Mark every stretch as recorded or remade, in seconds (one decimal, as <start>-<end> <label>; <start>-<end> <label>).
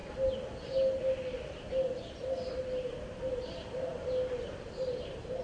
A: 0.0-5.4 recorded